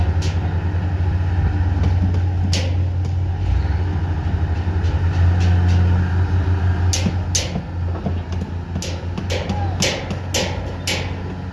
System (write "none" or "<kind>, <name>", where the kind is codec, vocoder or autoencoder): none